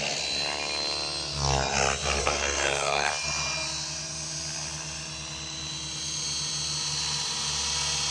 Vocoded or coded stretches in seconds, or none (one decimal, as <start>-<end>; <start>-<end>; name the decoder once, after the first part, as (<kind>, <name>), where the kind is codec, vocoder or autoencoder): 2.2-3.1 (codec, SNAC)